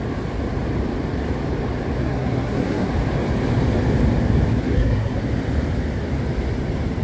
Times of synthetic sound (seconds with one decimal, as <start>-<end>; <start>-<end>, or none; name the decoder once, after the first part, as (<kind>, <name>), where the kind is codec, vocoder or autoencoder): 2.0-2.9 (codec, SNAC); 4.5-5.2